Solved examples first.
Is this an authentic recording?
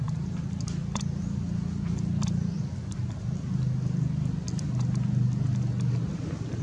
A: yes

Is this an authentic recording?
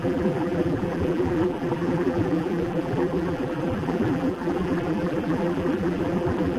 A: no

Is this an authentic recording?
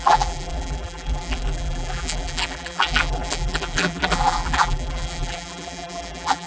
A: no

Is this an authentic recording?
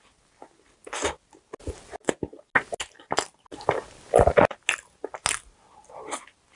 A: yes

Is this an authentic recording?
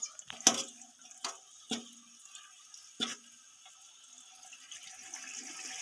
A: yes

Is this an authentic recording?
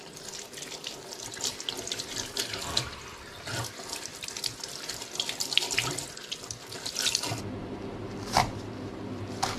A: yes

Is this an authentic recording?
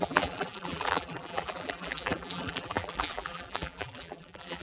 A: no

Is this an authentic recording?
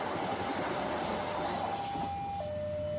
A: yes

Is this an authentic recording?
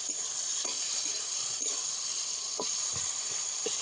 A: no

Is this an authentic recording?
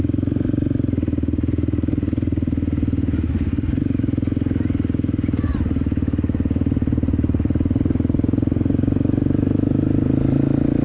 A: yes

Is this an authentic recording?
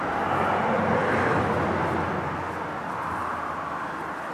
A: yes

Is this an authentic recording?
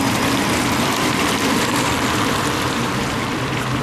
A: no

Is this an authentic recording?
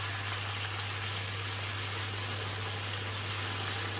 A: yes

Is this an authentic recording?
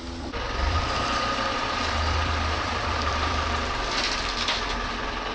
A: no